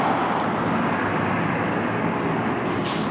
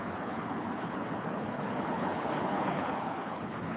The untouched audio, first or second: first